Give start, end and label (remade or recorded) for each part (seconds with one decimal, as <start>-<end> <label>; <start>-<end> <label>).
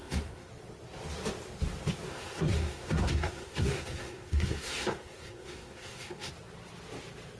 0.0-0.5 remade; 0.5-2.1 recorded; 2.1-6.3 remade; 6.3-7.4 recorded